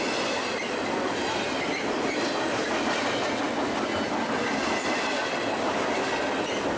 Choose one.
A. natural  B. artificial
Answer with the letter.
A